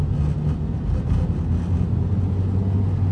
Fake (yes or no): no